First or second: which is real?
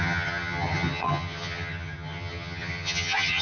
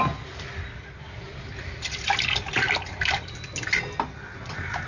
second